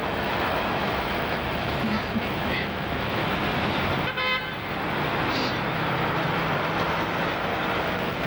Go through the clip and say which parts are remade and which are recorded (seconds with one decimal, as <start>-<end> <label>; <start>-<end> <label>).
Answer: 0.0-3.2 remade; 3.2-7.8 recorded; 7.8-8.3 remade